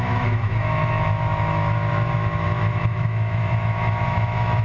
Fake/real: fake